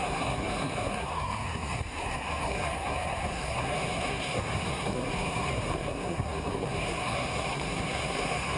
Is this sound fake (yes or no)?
yes